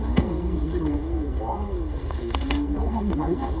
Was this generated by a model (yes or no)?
yes